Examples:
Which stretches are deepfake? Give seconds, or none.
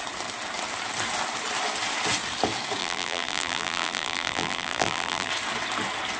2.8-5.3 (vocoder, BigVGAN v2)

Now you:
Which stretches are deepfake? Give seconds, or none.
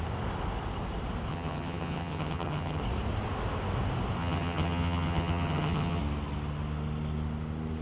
1.3-2.8 (vocoder, HiFi-GAN); 4.2-6.0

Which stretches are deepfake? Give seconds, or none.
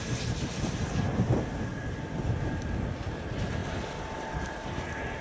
none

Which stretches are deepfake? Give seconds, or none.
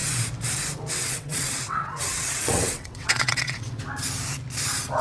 1.0-3.8 (vocoder, WaveNeXt)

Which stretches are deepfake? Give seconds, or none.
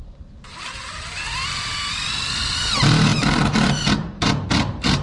none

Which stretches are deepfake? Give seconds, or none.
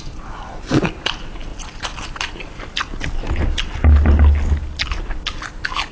none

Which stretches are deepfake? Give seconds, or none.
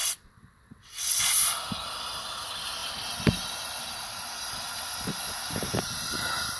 0.0-1.2 (vocoder, WaveNeXt)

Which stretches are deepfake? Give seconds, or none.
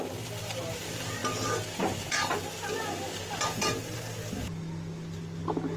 none